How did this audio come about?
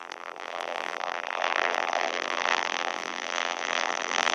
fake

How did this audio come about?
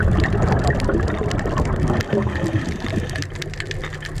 real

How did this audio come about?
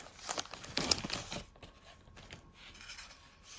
real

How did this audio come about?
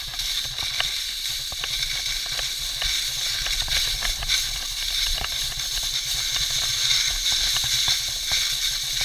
real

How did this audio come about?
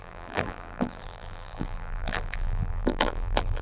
fake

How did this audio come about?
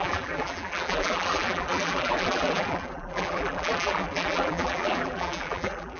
fake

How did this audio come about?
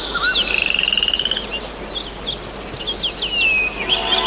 real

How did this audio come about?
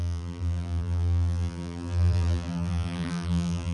fake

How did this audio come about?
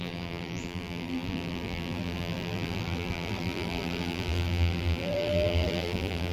fake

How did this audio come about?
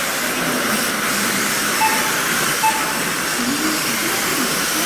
fake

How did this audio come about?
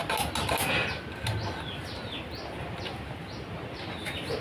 real